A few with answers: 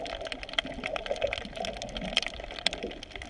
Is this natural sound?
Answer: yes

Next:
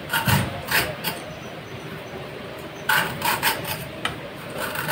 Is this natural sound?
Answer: no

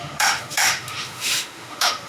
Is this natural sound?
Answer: no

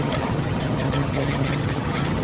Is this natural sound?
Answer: no